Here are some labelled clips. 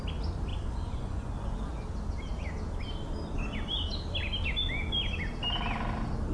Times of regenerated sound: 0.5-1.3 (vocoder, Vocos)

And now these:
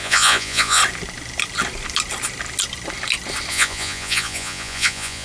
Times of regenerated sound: 0.0-0.8 (vocoder, Vocos); 3.5-5.2

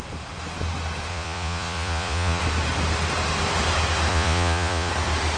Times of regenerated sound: 1.1-2.4 (vocoder, Vocos); 4.1-4.9

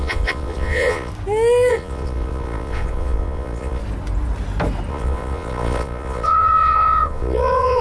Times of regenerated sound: 0.0-1.1 (vocoder, Vocos); 1.7-3.8; 4.9-7.8

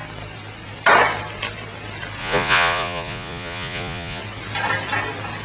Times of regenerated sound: 2.2-4.2 (vocoder, Vocos)

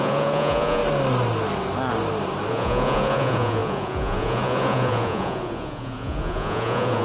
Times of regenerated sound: 0.0-0.8 (vocoder, Vocos); 2.5-7.0

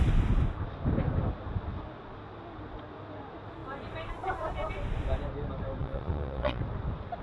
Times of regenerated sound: 5.8-6.6 (vocoder, Vocos)